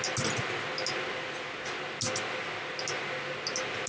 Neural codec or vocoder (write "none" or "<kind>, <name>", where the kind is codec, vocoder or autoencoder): none